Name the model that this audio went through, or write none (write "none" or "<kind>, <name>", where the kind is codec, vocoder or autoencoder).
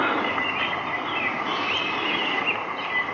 none